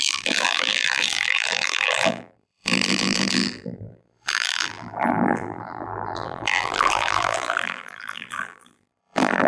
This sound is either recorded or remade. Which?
remade